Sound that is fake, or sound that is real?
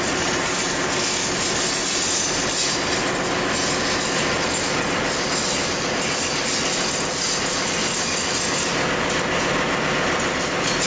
real